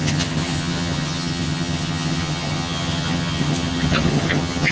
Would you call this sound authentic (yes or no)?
no